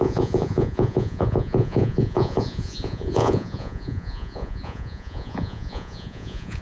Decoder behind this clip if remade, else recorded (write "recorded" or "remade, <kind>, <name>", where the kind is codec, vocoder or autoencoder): remade, vocoder, Vocos